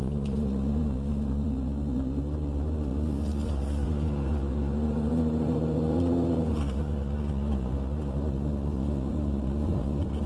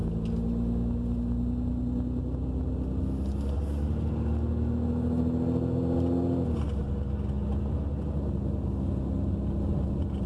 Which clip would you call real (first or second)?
second